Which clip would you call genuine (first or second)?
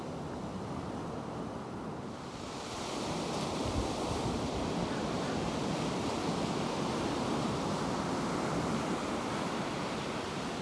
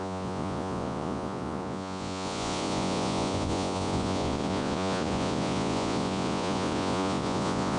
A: first